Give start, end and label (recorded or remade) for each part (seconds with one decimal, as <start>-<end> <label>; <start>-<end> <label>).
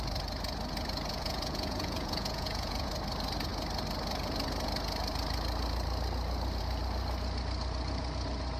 0.0-1.1 recorded; 1.1-2.9 remade; 2.9-8.6 recorded